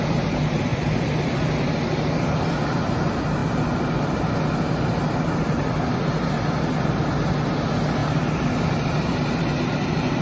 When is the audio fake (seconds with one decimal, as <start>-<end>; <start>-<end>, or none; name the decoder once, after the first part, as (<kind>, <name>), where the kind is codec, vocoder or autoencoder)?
0.7-1.7 (vocoder, BigVGAN v2)